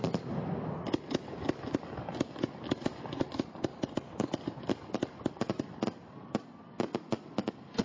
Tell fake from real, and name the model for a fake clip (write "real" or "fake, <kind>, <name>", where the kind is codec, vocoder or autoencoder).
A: real